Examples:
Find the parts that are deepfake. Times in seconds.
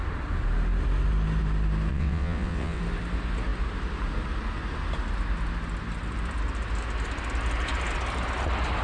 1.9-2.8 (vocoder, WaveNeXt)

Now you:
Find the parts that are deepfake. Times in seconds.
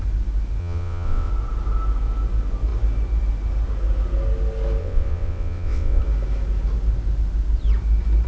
0.6-1.3 (vocoder, WaveNeXt); 4.8-6.0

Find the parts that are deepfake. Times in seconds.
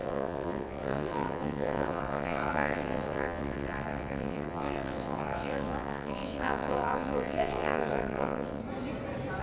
0.0-8.6 (vocoder, WaveNeXt)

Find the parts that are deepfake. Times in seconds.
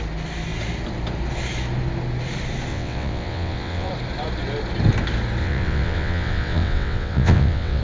2.7-3.9 (vocoder, WaveNeXt); 5.4-7.8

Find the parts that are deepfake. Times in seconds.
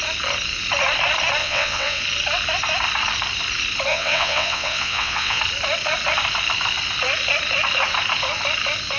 1.4-2.0 (vocoder, WaveNeXt); 3.9-5.4